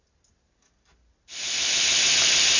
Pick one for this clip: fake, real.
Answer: real